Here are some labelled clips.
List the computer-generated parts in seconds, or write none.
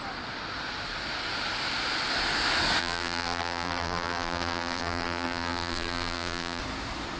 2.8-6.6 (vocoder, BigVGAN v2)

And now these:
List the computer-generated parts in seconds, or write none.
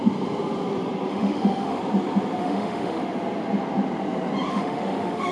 1.1-1.8 (autoencoder, DAC-VAE); 2.4-3.0; 4.5-5.3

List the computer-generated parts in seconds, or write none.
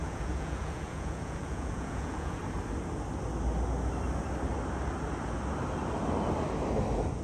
0.0-2.4 (vocoder, Vocos)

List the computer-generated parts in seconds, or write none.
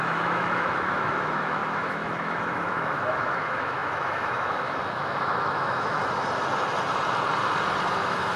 0.0-6.0 (autoencoder, DAC-VAE); 8.0-8.4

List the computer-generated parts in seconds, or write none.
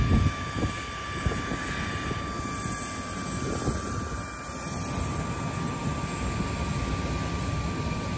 none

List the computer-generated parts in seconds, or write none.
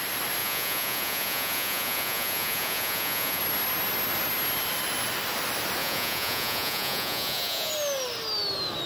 0.4-3.4 (vocoder, Vocos); 5.8-7.7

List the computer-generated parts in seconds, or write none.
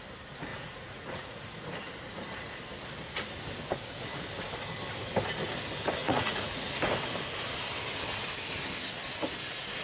0.5-1.4 (vocoder, Vocos); 6.0-6.8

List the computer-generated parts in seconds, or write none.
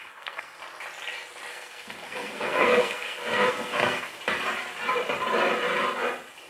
0.0-0.6 (codec, SNAC); 1.5-4.2